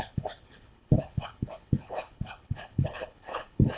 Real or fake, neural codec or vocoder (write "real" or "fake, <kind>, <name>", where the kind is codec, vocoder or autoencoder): fake, codec, HILCodec